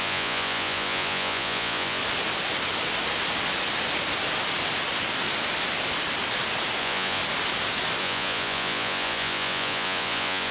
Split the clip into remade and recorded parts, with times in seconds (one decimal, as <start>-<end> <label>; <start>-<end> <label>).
0.0-2.0 remade; 2.0-6.8 recorded; 6.8-7.2 remade; 7.2-8.0 recorded; 8.0-10.5 remade